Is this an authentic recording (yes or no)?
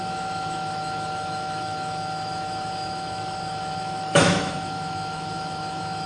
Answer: no